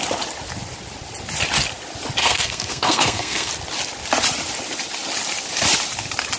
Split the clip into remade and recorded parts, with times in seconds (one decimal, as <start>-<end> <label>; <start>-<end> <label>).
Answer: 0.0-2.2 recorded; 2.2-3.5 remade; 3.5-6.4 recorded